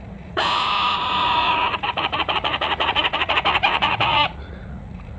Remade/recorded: remade